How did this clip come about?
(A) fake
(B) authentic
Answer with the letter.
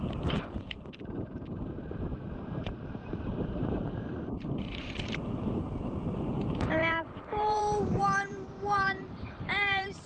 A